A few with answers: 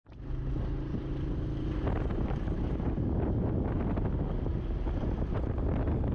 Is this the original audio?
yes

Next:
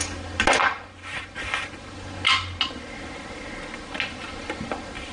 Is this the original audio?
yes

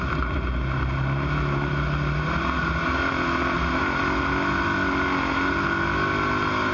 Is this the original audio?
yes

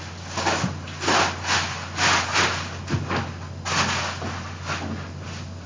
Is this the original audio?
yes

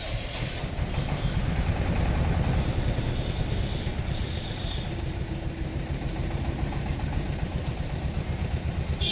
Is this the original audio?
no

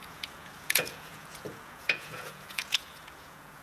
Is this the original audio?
no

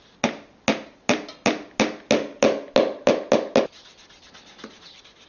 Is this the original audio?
yes